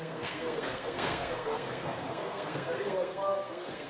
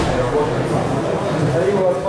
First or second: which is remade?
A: first